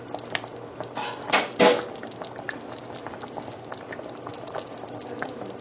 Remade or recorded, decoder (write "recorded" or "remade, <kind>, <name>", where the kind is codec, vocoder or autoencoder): recorded